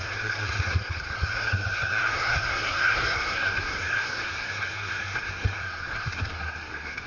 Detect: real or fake fake